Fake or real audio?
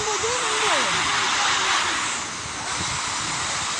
real